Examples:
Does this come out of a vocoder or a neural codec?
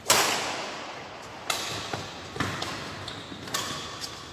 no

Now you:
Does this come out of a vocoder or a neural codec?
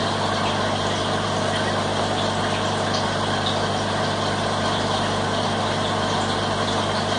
no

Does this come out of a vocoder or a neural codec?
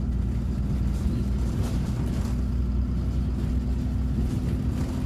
no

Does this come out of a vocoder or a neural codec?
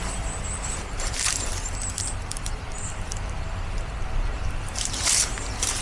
yes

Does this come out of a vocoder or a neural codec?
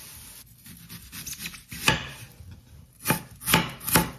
no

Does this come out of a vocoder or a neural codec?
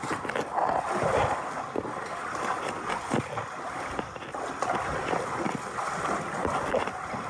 no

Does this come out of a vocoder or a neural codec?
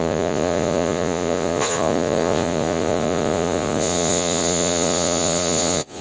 yes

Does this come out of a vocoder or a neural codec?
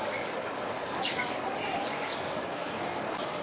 yes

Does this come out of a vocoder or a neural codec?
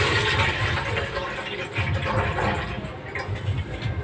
no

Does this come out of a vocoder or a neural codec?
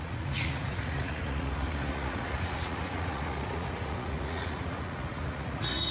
yes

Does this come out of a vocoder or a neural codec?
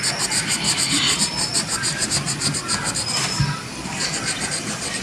no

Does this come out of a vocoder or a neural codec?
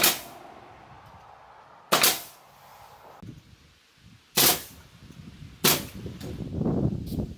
no